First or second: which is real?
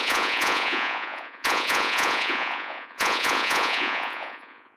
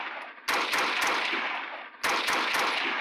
second